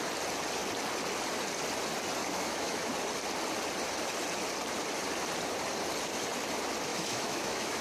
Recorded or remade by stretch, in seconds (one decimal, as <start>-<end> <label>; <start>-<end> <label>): 0.0-2.2 recorded; 2.2-2.9 remade; 2.9-6.9 recorded; 6.9-7.8 remade